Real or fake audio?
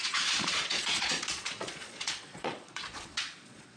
fake